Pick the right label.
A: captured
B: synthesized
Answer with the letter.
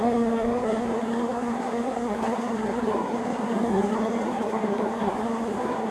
B